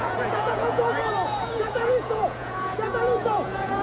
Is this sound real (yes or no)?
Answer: no